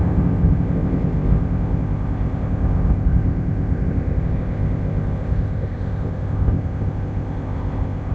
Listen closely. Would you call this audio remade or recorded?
remade